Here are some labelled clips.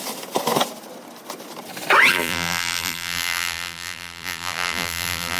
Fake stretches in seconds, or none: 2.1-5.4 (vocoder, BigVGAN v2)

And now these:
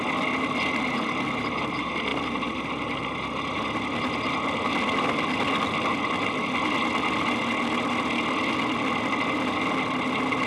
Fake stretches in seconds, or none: none

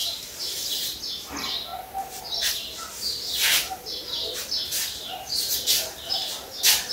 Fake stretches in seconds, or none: 0.0-1.0 (vocoder, BigVGAN v2); 2.9-4.9

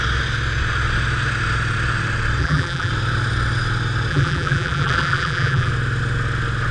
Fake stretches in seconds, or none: 2.4-2.9 (vocoder, BigVGAN v2); 4.1-5.7

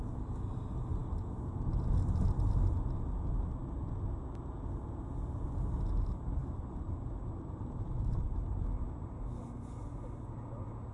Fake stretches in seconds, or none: 6.4-8.6 (vocoder, BigVGAN v2)

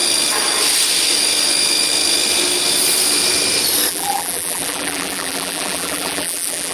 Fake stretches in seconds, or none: 3.9-6.7 (vocoder, BigVGAN v2)

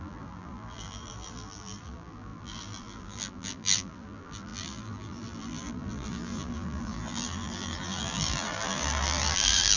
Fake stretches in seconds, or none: 0.0-9.8 (vocoder, BigVGAN v2)

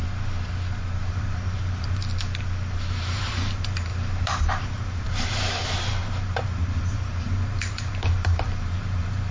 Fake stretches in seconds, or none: 1.1-2.0 (vocoder, BigVGAN v2); 2.9-3.9; 4.5-9.3